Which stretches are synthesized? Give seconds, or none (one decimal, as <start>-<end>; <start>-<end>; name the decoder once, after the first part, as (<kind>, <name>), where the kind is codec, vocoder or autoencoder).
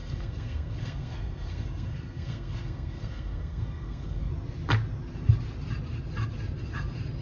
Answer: 0.0-4.3 (codec, SNAC)